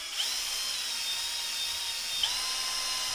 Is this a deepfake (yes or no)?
no